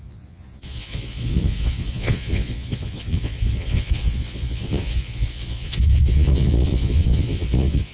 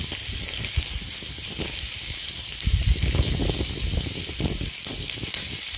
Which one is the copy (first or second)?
first